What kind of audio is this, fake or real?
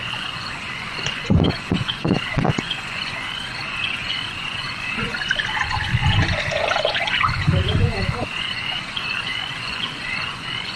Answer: fake